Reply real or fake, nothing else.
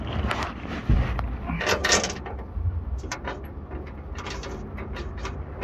real